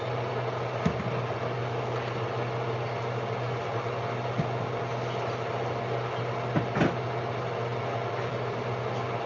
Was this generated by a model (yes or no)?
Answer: no